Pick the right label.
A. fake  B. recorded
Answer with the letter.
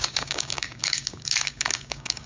A